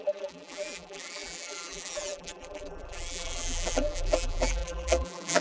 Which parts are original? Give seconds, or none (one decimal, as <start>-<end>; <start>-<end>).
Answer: none